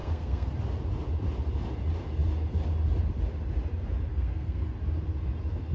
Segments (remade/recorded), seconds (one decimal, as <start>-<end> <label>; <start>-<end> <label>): 0.0-0.5 remade; 0.5-4.1 recorded; 4.1-4.7 remade; 4.7-5.7 recorded